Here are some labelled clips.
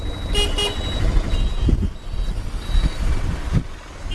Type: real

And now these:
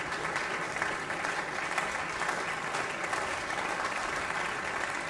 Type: real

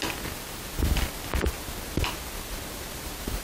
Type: real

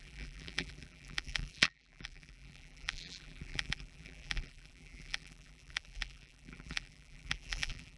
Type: fake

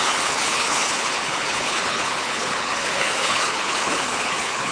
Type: fake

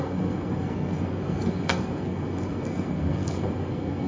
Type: fake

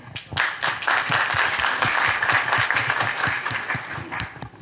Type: real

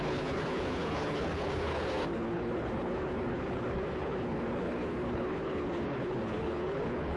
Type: fake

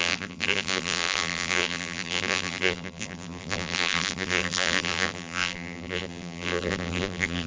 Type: fake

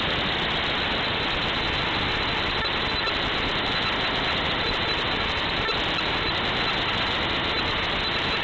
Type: real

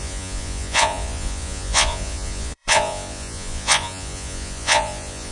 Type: fake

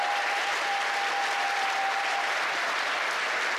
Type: real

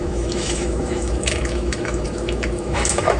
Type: fake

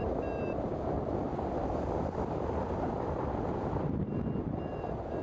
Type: real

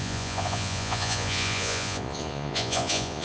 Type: fake